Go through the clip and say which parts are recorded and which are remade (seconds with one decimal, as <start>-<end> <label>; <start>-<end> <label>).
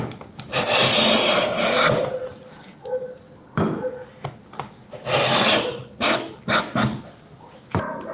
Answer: 0.0-8.1 recorded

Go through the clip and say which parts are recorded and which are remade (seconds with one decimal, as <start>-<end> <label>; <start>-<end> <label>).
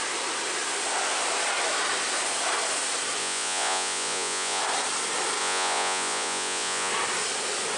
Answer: 0.0-3.2 recorded; 3.2-4.6 remade; 4.6-5.4 recorded; 5.4-6.9 remade; 6.9-7.8 recorded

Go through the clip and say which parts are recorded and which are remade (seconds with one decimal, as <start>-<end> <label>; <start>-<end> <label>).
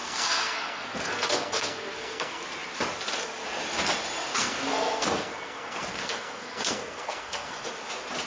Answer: 0.0-2.4 remade; 2.4-4.3 recorded; 4.3-7.7 remade; 7.7-8.3 recorded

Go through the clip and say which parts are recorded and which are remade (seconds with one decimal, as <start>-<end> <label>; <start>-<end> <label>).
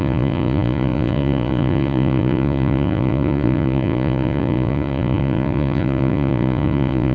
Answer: 0.0-7.1 remade